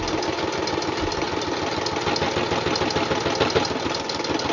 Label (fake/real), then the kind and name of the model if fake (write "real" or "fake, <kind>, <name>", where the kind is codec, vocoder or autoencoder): real